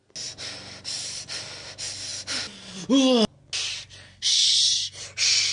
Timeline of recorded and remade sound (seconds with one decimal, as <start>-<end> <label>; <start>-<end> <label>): 0.0-5.5 recorded